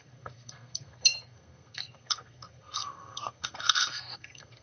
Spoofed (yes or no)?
yes